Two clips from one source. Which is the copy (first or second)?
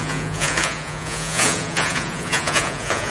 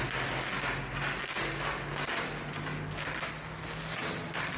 first